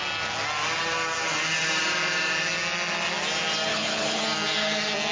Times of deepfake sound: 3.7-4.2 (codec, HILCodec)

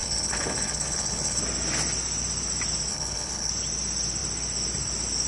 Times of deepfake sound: 0.0-1.4 (codec, HILCodec); 2.9-3.5

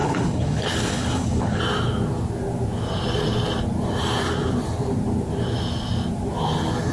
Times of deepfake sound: 0.0-1.6 (codec, HILCodec)

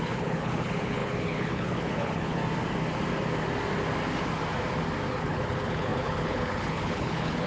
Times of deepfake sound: 0.0-2.4 (codec, HILCodec); 5.1-7.5

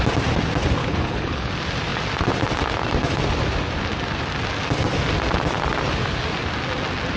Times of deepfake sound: 0.8-1.5 (codec, HILCodec)